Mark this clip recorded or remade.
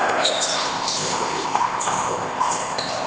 remade